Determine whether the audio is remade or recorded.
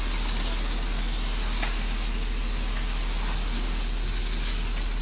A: recorded